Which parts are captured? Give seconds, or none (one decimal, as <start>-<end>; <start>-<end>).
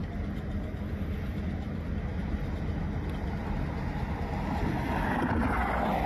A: 0.0-3.4; 4.0-6.1